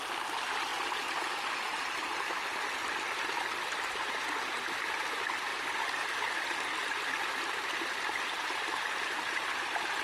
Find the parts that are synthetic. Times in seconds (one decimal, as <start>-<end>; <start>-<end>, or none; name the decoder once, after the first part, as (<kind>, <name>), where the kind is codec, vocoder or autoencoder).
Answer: 0.0-0.7 (vocoder, BigVGAN v2); 1.8-2.8; 5.0-10.0